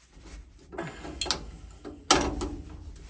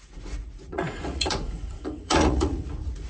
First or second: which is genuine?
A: first